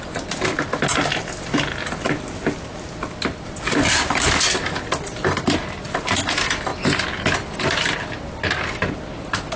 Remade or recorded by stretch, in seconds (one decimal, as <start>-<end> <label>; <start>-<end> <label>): 0.0-9.6 recorded